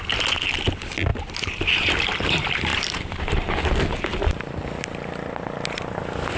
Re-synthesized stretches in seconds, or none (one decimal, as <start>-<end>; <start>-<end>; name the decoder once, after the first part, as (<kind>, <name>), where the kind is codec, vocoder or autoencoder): 2.7-3.4 (vocoder, BigVGAN v2); 4.1-4.8